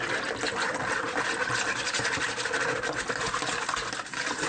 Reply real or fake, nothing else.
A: real